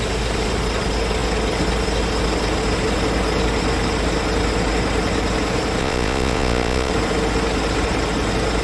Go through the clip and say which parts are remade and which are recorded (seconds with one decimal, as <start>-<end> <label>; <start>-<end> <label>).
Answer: 0.0-5.8 recorded; 5.8-6.9 remade; 6.9-8.6 recorded